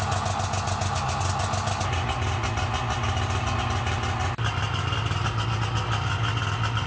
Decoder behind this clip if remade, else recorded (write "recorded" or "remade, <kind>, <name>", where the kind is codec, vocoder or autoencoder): recorded